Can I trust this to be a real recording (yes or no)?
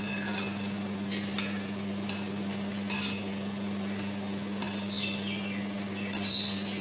yes